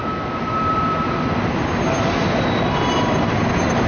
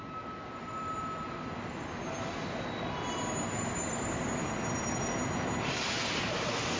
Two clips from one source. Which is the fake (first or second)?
first